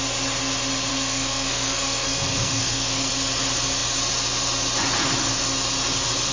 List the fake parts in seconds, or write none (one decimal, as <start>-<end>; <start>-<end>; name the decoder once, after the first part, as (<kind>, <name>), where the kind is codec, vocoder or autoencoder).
0.9-3.1 (codec, SNAC)